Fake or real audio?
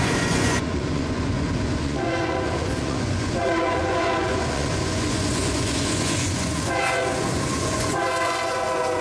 fake